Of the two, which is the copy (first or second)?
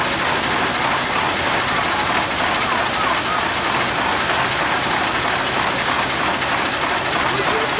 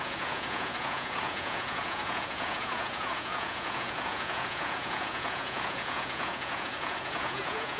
second